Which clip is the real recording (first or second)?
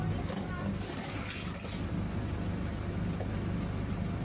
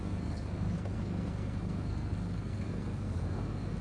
first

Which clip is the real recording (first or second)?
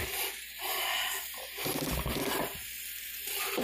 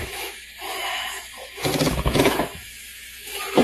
first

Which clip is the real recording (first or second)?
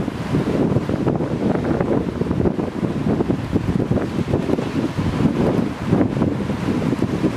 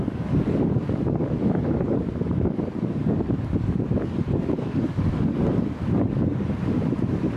first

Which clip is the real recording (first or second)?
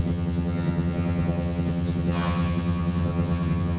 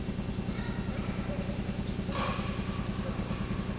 second